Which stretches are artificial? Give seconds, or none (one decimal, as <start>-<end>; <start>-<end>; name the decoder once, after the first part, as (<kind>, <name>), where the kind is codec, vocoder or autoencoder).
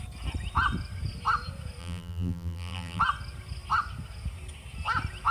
1.8-3.0 (vocoder, BigVGAN v2)